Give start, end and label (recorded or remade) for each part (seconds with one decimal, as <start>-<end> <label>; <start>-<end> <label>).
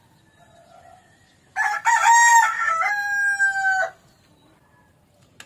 0.0-5.5 recorded